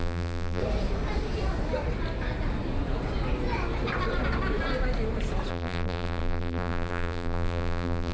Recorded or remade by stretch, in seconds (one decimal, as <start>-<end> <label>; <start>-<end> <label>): 0.0-0.6 remade; 0.6-5.5 recorded; 5.5-8.1 remade